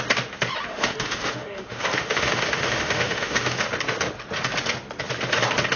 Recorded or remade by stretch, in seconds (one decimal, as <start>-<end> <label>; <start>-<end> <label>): 0.0-0.7 recorded; 0.7-3.7 remade; 3.7-5.8 recorded

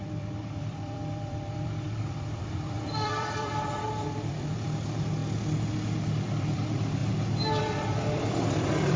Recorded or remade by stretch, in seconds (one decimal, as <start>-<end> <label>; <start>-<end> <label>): 0.0-5.2 remade; 5.2-6.2 recorded; 6.2-7.0 remade; 7.0-7.6 recorded; 7.6-9.0 remade